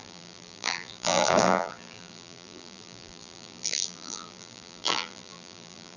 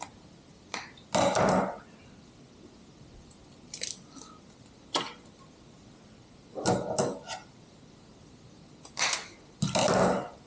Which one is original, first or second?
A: second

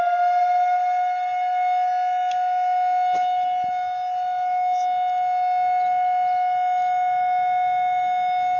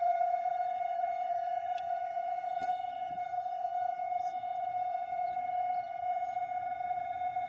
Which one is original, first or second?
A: first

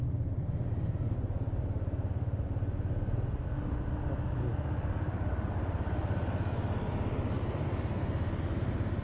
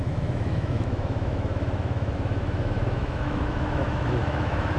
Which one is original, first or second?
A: first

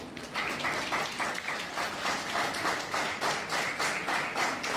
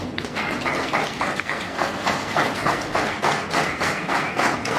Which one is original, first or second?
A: first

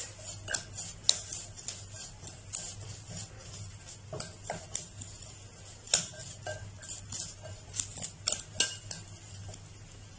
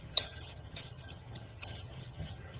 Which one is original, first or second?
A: first